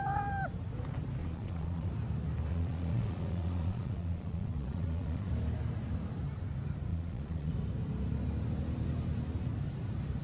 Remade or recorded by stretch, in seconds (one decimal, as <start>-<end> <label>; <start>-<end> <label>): 0.0-1.2 recorded; 1.2-1.9 remade; 1.9-2.5 recorded; 2.5-5.3 remade; 5.3-6.9 recorded; 6.9-7.5 remade; 7.5-10.2 recorded